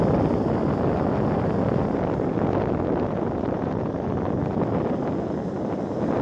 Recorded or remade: recorded